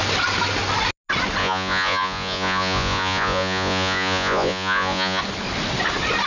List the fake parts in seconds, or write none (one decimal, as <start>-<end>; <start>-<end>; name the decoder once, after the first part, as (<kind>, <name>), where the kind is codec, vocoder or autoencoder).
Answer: 1.4-5.2 (vocoder, Vocos)